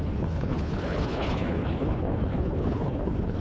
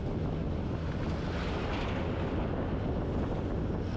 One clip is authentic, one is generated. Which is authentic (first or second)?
second